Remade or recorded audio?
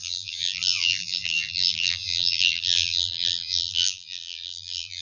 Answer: remade